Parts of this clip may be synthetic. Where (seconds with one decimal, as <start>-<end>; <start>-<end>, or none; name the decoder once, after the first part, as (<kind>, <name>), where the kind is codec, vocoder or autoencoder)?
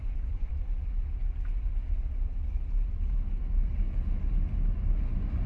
0.0-0.5 (vocoder, Vocos)